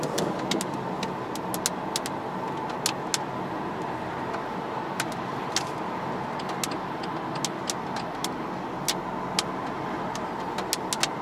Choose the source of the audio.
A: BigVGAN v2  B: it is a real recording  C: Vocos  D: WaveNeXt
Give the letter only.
B